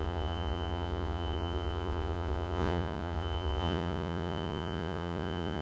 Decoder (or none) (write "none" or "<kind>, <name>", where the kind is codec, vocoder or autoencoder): vocoder, Vocos